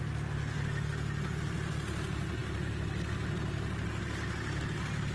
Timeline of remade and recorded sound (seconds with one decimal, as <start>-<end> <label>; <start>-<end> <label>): 0.0-5.1 recorded